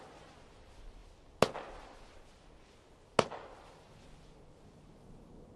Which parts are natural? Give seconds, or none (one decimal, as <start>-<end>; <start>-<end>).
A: 0.0-5.6